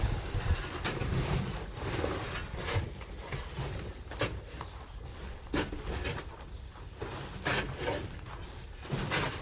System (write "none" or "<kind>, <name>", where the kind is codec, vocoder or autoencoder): none